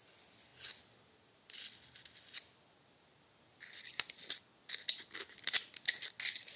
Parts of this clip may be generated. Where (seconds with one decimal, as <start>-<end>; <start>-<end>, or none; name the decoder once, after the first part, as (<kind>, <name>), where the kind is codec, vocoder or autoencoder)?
none